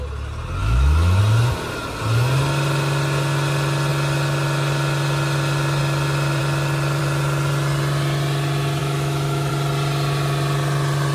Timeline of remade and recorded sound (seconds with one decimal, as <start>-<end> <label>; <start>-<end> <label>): 0.0-0.6 recorded; 0.6-1.2 remade; 1.2-8.8 recorded; 8.8-9.5 remade; 9.5-11.1 recorded